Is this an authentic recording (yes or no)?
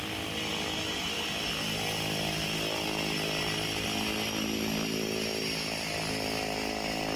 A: yes